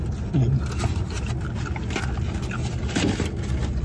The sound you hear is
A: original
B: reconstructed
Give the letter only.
A